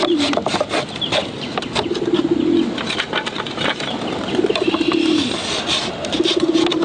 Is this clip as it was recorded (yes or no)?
yes